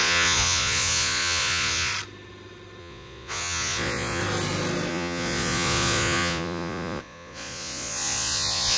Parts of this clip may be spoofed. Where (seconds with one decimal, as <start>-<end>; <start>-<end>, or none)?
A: 0.0-1.9; 2.8-4.2; 4.9-8.8